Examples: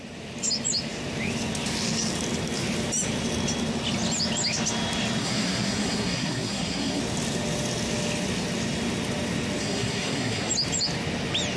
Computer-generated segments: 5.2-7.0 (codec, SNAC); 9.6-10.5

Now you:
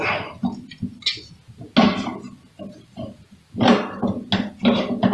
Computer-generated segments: none

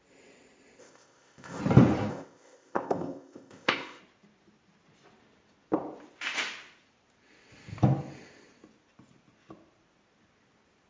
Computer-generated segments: 0.8-1.6 (codec, ZipCodec); 2.1-4.0

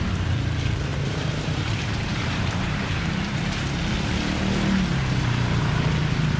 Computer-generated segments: 0.9-3.4 (vocoder, BigVGAN v2)

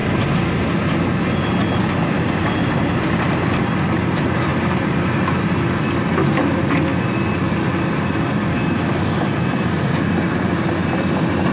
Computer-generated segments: none

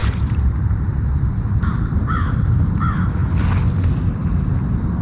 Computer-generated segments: 0.0-2.3 (vocoder, BigVGAN v2)